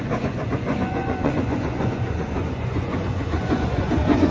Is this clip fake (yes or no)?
yes